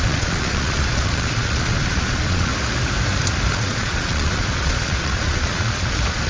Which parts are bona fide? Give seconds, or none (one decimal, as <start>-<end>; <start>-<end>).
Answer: 2.5-3.5